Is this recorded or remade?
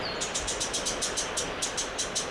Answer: remade